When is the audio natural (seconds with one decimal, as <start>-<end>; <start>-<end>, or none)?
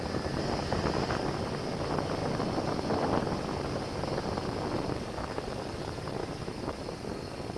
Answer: 0.0-6.2; 6.9-7.6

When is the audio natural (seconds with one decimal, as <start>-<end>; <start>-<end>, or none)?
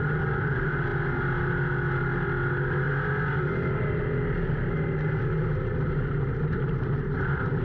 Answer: 0.0-7.6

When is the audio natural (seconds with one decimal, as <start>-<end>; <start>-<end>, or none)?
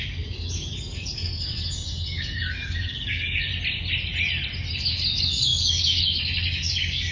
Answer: 3.5-4.7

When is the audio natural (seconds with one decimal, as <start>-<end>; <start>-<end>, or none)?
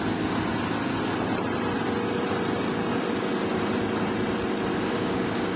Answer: 0.0-4.7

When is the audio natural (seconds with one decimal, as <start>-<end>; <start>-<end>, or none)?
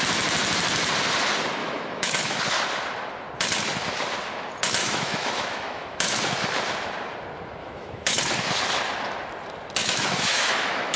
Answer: 0.0-1.6; 2.4-4.8; 6.1-7.6; 8.2-9.8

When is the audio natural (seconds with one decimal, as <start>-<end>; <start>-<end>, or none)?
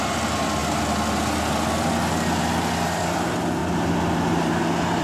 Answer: 0.0-5.0